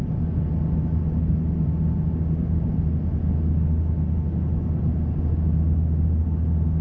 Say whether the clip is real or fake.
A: real